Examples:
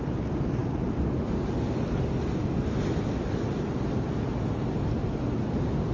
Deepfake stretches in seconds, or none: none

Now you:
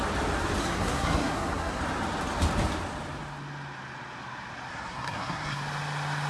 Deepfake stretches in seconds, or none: 0.6-1.8 (codec, SNAC); 4.7-5.6

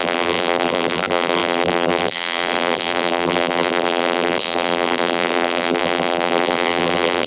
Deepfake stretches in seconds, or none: 0.0-7.3 (vocoder, BigVGAN v2)

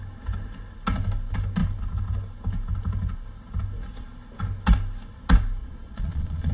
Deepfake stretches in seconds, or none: 5.6-6.5 (vocoder, Vocos)

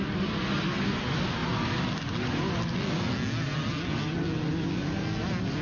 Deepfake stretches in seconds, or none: none

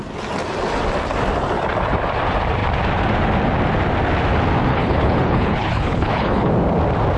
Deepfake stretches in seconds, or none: 4.7-6.5 (codec, HILCodec)

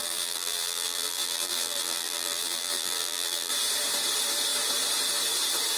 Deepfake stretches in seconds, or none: 0.0-3.5 (vocoder, BigVGAN v2)

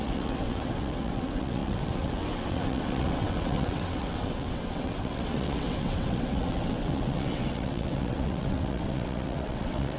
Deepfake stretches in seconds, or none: 0.0-10.0 (vocoder, WaveNeXt)